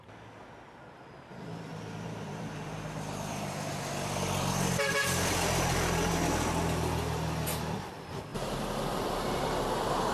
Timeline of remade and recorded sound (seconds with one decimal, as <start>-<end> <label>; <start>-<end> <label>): 0.0-1.7 recorded; 1.7-6.1 remade; 6.1-8.3 recorded; 8.3-9.6 remade; 9.6-10.1 recorded